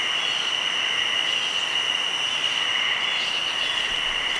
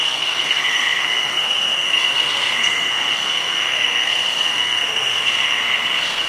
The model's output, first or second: second